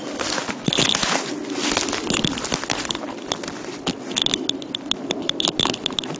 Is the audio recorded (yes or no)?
yes